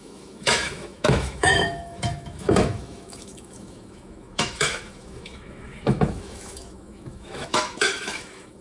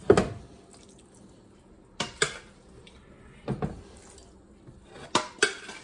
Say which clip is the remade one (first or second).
first